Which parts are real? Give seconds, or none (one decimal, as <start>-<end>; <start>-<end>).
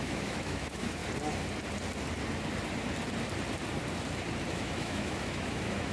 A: 1.0-4.5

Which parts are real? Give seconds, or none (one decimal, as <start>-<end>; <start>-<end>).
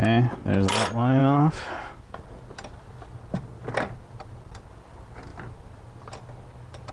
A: 0.0-1.2; 1.9-6.9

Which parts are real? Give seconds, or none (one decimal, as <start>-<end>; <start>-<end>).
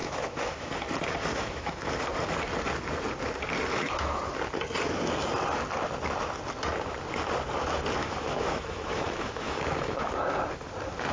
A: 0.7-1.3; 2.0-3.7; 4.2-8.0; 10.1-11.1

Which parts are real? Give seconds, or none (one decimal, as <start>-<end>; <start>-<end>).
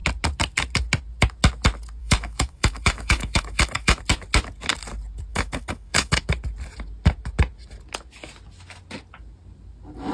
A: 0.0-2.0; 4.0-5.3; 6.2-10.1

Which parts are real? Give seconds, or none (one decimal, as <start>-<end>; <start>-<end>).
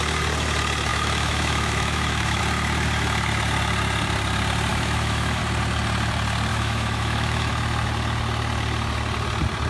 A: 0.0-0.9; 2.4-4.7; 5.4-6.5; 7.5-9.7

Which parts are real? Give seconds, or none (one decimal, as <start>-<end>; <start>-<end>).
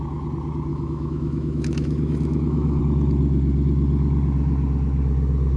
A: 0.0-0.7; 2.8-5.6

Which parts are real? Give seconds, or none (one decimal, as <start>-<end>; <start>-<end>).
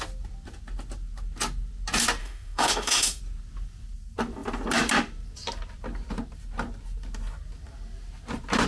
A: 0.0-2.2; 3.2-8.7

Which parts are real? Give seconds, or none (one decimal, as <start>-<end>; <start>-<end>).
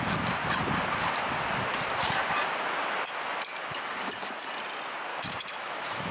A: 0.0-5.1